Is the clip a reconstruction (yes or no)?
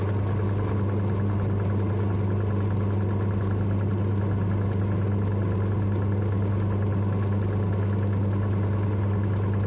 no